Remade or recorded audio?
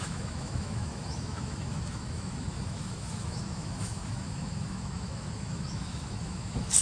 remade